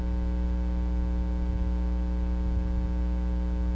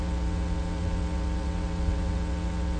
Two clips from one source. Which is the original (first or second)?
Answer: first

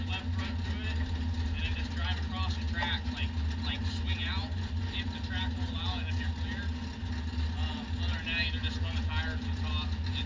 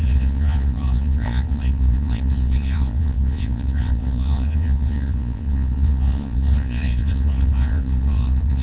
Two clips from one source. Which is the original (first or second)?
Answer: first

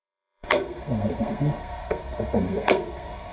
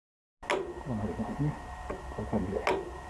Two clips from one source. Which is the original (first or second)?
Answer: second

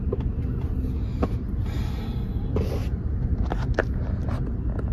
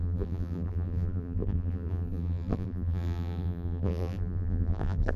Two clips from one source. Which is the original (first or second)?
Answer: first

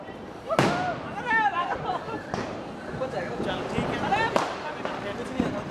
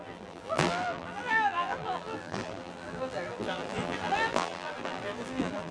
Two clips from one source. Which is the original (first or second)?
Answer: first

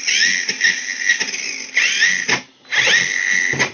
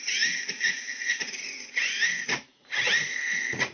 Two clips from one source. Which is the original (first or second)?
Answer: first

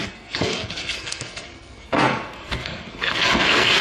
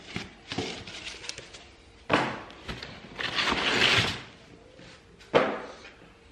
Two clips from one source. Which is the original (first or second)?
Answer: second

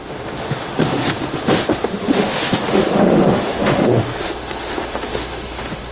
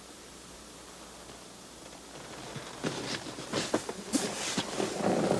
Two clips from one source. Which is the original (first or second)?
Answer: second